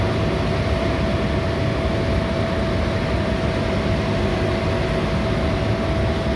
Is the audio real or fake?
real